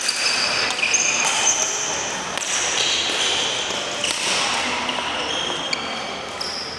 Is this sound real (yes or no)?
yes